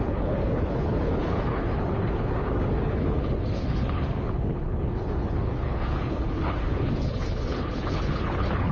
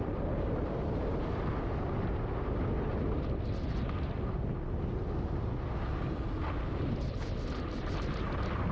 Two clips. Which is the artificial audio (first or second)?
first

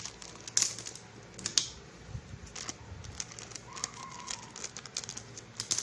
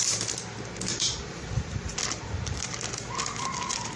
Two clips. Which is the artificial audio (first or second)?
second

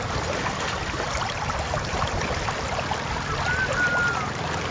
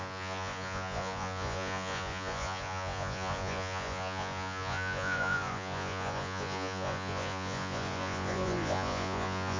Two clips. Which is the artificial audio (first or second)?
second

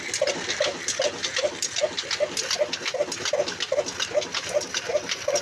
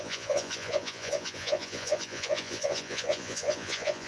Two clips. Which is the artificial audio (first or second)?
second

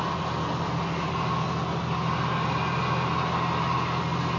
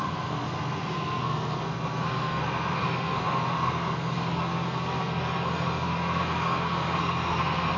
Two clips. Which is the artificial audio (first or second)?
second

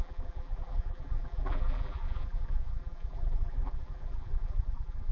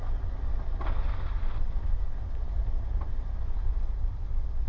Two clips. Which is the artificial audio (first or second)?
first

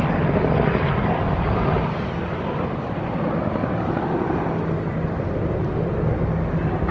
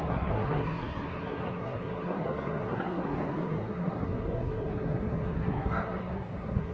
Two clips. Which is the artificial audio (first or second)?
second